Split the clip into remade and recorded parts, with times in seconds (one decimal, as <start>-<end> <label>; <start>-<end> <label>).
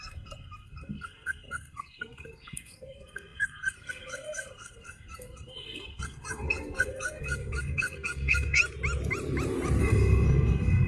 0.0-8.6 remade; 8.6-9.8 recorded; 9.8-10.9 remade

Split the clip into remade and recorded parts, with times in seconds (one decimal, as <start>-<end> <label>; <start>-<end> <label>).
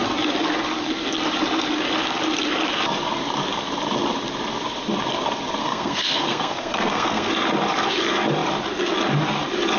0.0-5.6 recorded; 5.6-7.3 remade; 7.3-9.8 recorded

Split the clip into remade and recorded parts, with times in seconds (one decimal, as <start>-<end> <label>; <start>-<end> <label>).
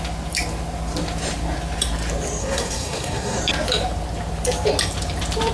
0.0-2.4 recorded; 2.4-3.4 remade; 3.4-5.5 recorded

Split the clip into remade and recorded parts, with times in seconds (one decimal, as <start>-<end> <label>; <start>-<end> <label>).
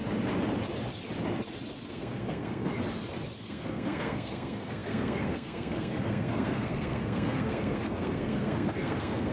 0.0-1.9 recorded; 1.9-2.7 remade; 2.7-3.4 recorded; 3.4-9.3 remade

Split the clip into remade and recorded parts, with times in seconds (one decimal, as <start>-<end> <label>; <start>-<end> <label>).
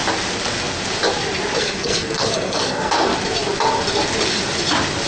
0.0-1.6 recorded; 1.6-3.1 remade; 3.1-5.1 recorded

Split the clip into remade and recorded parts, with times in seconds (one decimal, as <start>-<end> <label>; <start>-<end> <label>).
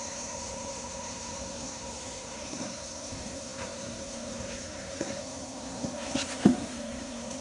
0.0-7.4 remade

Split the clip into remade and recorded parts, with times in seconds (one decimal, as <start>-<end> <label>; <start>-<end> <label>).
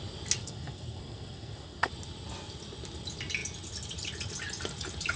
0.0-0.4 recorded; 0.4-1.9 remade; 1.9-5.2 recorded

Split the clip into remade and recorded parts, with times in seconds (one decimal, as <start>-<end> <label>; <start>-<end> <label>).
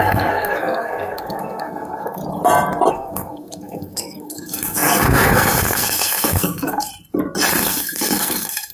0.0-2.2 remade; 2.2-2.9 recorded; 2.9-6.9 remade; 6.9-7.6 recorded; 7.6-8.7 remade